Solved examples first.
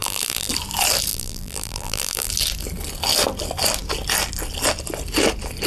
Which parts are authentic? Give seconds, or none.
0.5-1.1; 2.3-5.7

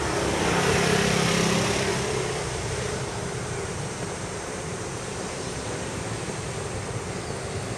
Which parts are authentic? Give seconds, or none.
0.0-1.9; 6.0-7.8

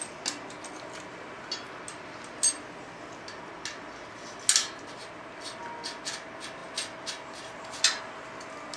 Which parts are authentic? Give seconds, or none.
0.0-8.8

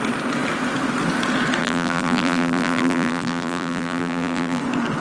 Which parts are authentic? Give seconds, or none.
0.0-1.6; 4.6-5.0

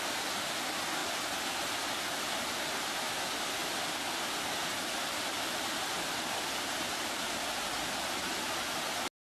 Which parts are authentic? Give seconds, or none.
0.0-3.6; 8.4-9.4

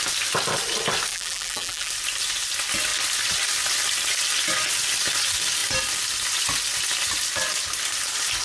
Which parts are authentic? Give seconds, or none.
0.0-1.1; 1.9-8.4